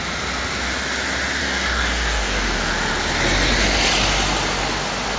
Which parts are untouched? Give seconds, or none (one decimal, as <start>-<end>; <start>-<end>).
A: 0.0-1.4; 2.7-5.2